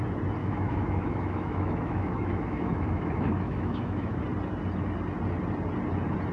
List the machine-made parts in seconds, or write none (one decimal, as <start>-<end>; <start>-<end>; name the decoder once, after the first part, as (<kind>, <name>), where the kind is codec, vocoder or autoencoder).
0.4-4.2 (autoencoder, DAC-VAE)